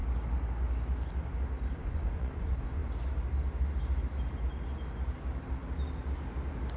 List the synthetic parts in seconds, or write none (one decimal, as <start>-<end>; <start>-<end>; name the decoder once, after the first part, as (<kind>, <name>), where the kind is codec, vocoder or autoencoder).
1.8-2.8 (vocoder, Vocos)